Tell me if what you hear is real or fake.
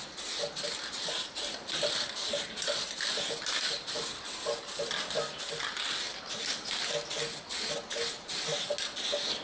real